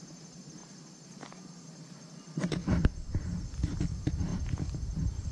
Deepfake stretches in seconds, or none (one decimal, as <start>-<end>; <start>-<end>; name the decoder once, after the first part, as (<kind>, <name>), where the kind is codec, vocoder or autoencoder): 0.0-2.6 (vocoder, BigVGAN v2); 3.7-5.3